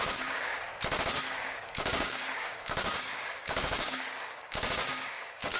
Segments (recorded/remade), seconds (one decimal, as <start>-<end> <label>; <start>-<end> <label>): 0.0-0.5 remade; 0.5-1.2 recorded; 1.2-5.6 remade